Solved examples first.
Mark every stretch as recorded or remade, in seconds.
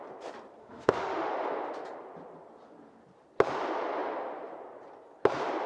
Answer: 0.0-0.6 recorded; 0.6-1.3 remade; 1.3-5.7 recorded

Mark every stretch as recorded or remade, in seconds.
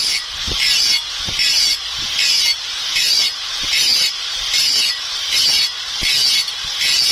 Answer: 0.0-2.5 recorded; 2.5-3.2 remade; 3.2-3.9 recorded; 3.9-5.4 remade; 5.4-7.1 recorded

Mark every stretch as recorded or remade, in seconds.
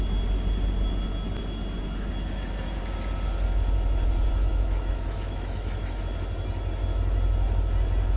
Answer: 0.0-4.4 recorded; 4.4-6.0 remade; 6.0-8.2 recorded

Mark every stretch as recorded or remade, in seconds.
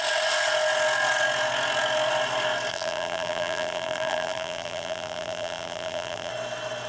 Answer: 0.0-2.7 recorded; 2.7-6.3 remade; 6.3-6.9 recorded